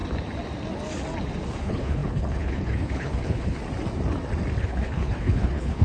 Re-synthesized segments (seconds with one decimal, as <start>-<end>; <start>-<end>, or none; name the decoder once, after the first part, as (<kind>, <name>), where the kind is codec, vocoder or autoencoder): 1.6-3.6 (codec, HILCodec); 4.6-5.8